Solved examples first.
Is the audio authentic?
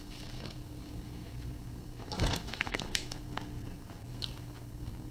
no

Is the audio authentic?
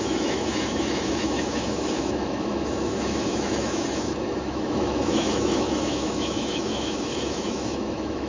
no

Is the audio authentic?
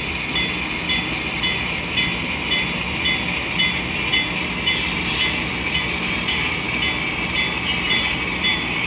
yes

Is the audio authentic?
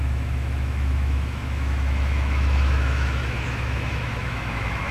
no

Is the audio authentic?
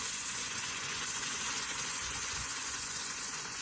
no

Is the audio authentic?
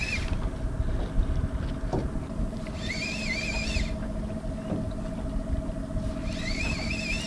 yes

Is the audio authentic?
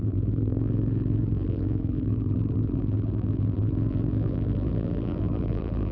no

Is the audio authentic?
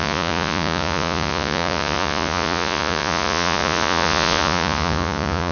no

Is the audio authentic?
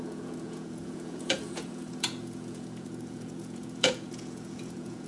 no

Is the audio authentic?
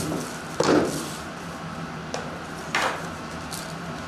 yes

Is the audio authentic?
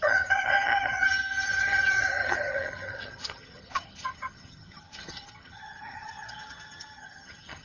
no